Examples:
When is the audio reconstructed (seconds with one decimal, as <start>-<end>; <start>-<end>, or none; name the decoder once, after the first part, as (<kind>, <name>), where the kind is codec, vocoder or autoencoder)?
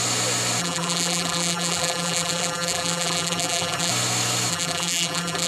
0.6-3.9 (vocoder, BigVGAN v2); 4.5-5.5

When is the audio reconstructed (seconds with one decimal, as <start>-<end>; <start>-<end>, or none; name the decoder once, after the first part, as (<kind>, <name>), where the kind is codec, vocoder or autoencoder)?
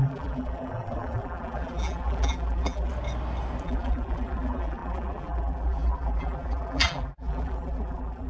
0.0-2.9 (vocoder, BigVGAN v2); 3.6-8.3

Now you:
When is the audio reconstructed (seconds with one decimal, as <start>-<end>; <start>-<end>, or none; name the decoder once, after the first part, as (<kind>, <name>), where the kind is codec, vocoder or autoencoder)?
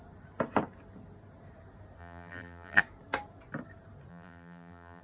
2.0-2.8 (vocoder, BigVGAN v2); 4.1-5.0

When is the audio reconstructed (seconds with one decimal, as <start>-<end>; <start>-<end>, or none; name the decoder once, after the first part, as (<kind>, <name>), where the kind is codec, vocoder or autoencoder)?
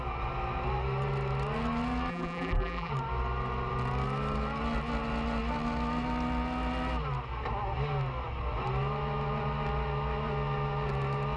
2.1-2.9 (vocoder, BigVGAN v2)